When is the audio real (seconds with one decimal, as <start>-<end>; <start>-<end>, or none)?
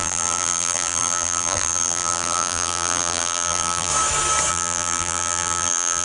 3.9-4.5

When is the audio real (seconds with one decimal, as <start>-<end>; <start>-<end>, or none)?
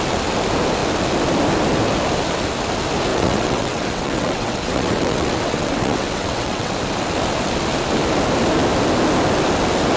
0.0-3.1; 6.7-10.0